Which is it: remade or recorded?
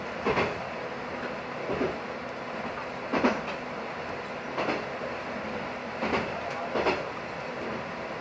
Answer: recorded